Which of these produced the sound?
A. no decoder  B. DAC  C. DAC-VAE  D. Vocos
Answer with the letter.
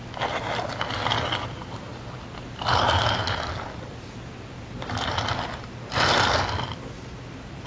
A